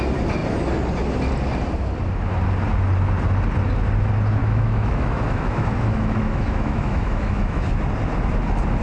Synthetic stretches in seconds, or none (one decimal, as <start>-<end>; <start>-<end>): 4.4-7.7